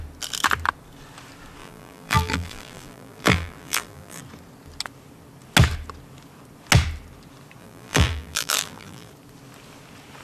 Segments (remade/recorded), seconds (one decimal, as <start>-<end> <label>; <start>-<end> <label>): 0.0-1.6 recorded; 1.6-4.2 remade; 4.2-7.6 recorded; 7.6-9.1 remade; 9.1-10.2 recorded